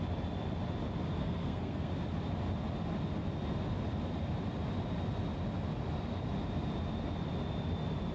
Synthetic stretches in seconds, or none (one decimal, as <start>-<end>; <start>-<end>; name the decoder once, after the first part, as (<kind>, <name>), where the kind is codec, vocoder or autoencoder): 1.2-1.9 (codec, SNAC)